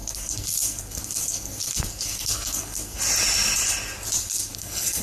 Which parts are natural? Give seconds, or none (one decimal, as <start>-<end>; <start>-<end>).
3.0-4.2